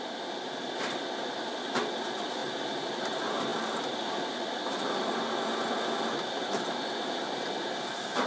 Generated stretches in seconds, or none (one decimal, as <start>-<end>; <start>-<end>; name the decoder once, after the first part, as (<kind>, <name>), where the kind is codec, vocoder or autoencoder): 2.4-3.0 (vocoder, BigVGAN v2); 3.5-5.5